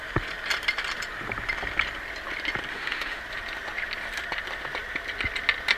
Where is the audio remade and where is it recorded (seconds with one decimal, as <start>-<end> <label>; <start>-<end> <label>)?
0.0-2.7 recorded; 2.7-3.2 remade; 3.2-5.8 recorded